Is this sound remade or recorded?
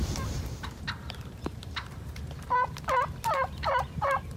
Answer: remade